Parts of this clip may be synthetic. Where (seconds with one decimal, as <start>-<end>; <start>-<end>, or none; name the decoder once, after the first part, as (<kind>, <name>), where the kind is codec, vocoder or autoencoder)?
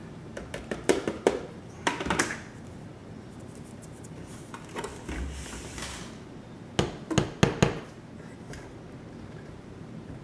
0.0-4.9 (vocoder, BigVGAN v2); 9.1-10.2